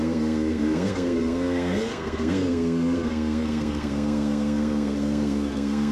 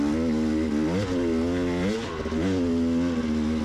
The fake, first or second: first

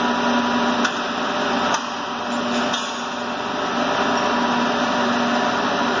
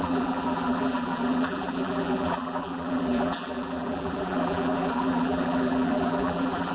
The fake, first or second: second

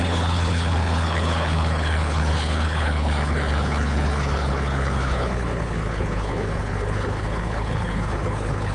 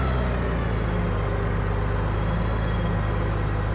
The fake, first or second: first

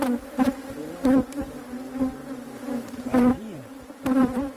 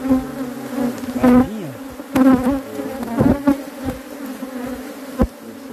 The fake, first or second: first